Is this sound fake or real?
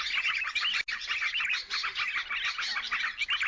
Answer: real